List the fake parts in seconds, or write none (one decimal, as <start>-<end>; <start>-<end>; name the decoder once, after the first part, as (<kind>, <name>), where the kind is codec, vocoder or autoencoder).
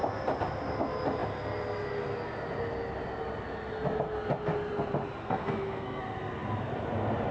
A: 5.2-6.0 (codec, SNAC)